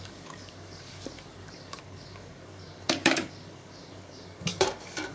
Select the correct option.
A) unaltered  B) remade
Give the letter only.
B